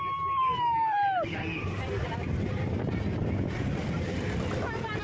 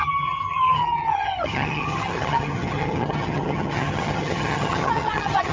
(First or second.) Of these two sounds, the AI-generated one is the second